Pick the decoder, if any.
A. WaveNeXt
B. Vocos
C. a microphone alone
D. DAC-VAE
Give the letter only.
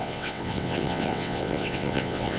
A